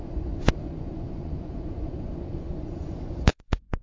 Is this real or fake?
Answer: fake